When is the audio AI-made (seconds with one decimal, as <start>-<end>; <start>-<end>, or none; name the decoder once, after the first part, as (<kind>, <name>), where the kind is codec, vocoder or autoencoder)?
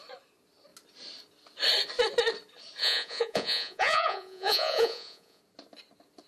2.8-5.4 (vocoder, Vocos)